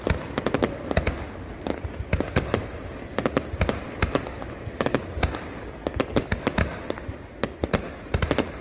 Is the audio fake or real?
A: real